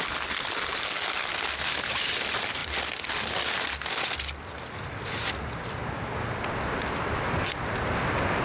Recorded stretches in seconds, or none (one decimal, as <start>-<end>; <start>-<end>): 0.0-8.4